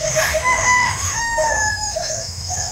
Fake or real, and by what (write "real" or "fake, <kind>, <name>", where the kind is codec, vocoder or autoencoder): fake, autoencoder, DAC-VAE